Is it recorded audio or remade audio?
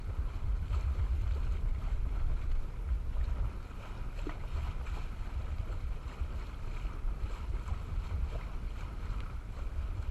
recorded